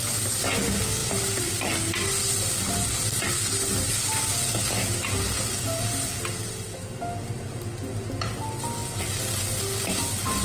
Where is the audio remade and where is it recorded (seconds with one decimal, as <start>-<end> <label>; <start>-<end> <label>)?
0.0-1.0 recorded; 1.0-1.5 remade; 1.5-10.4 recorded